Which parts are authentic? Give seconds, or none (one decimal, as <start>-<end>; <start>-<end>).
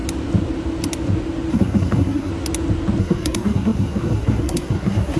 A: 0.0-1.5; 2.3-3.0